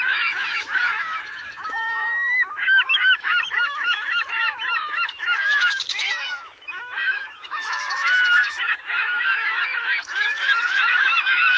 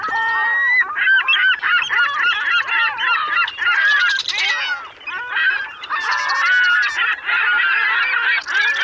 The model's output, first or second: first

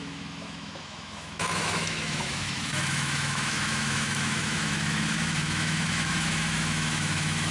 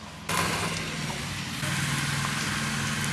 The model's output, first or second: first